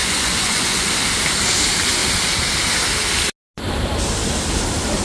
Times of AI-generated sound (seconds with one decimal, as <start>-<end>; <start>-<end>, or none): 0.0-0.9